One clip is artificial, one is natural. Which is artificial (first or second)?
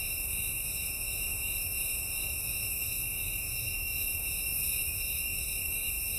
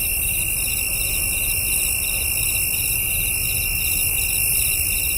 first